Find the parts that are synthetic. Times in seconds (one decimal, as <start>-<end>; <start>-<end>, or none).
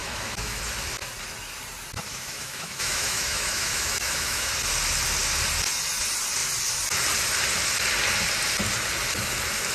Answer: 0.0-0.6; 2.1-4.5